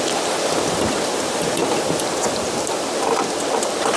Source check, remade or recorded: recorded